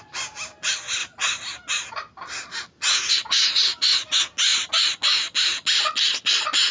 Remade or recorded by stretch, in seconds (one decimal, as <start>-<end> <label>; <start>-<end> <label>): 0.0-6.7 recorded